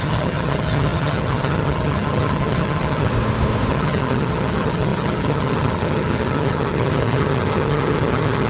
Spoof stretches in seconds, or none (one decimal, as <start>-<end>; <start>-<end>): 0.0-3.1; 3.7-8.5